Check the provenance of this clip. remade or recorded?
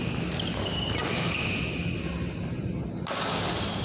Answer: recorded